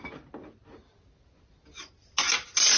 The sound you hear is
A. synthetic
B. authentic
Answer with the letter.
B